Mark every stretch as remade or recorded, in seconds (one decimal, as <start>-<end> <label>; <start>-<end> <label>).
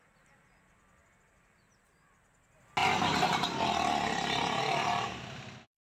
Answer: 0.0-6.0 recorded